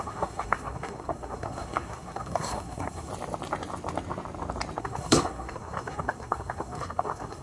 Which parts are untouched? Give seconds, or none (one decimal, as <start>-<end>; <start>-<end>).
3.1-4.8